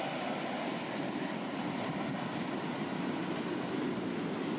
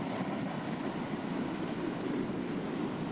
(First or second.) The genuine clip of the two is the first